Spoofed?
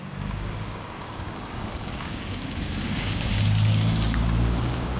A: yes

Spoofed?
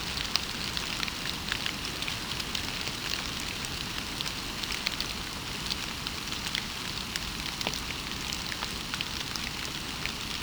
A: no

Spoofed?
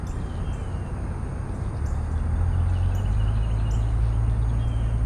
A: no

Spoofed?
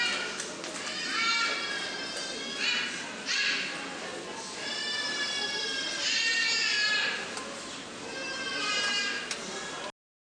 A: no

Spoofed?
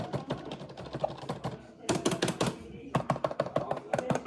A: no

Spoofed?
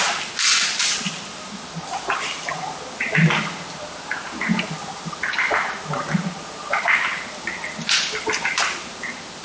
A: no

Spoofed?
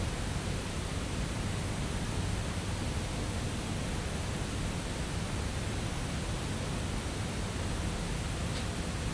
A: no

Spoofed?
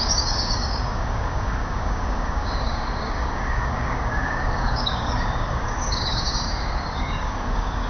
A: yes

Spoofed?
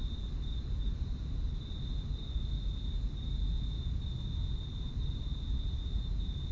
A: no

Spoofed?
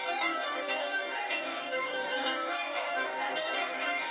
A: yes